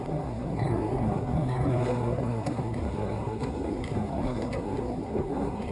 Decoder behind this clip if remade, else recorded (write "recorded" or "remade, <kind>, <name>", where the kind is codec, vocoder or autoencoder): remade, codec, SNAC